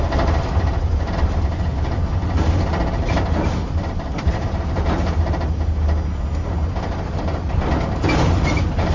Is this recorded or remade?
recorded